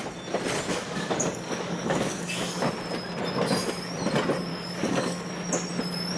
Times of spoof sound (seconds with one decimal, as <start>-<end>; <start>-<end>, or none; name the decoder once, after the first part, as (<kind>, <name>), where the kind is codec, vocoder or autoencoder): 0.7-2.6 (codec, DAC); 4.5-5.3